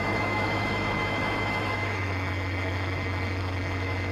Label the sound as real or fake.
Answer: fake